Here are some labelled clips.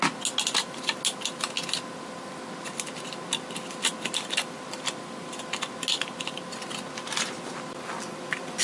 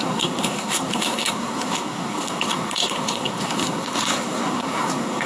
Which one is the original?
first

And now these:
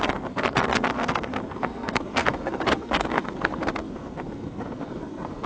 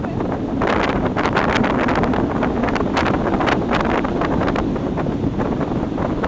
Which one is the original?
second